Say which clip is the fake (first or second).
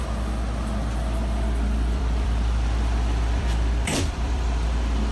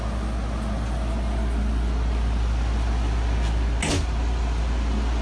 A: first